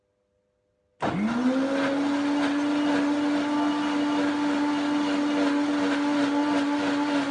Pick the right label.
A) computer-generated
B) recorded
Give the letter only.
B